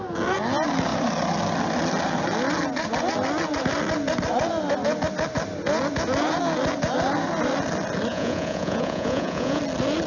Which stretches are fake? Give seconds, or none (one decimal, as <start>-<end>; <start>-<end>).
8.1-9.6